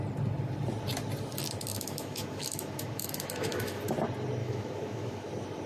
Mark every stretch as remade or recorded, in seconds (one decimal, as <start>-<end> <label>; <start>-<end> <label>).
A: 0.0-1.7 recorded; 1.7-3.8 remade; 3.8-4.4 recorded; 4.4-5.3 remade; 5.3-5.7 recorded